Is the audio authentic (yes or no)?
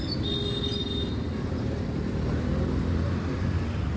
yes